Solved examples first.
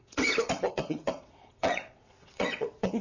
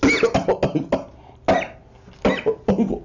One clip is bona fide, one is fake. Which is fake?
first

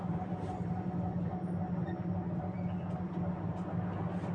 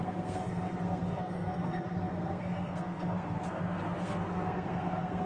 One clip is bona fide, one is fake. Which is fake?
second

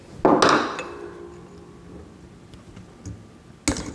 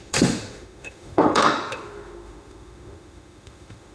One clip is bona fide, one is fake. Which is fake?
second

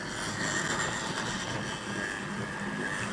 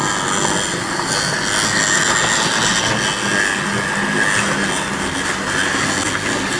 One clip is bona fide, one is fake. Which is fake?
first